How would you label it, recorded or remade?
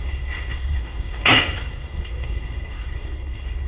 remade